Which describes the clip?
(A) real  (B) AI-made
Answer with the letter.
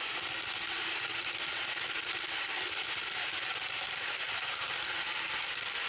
A